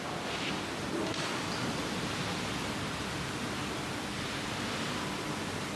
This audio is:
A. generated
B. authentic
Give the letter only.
B